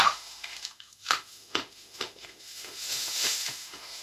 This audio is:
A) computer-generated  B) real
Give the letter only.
A